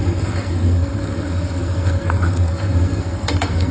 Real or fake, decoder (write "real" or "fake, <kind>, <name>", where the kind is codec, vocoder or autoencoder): fake, codec, SNAC